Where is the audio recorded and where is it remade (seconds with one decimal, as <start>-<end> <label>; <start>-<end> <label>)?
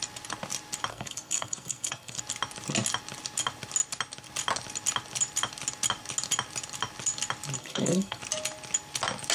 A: 0.0-0.9 recorded; 0.9-2.2 remade; 2.2-7.6 recorded; 7.6-8.2 remade; 8.2-9.3 recorded